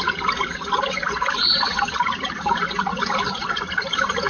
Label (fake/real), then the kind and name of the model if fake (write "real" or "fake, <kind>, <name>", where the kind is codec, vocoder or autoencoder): real